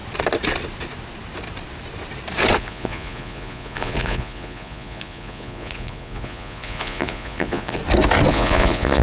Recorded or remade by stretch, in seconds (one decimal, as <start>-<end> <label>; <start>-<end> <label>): 0.0-2.6 recorded; 2.6-7.8 remade; 7.8-8.3 recorded; 8.3-9.0 remade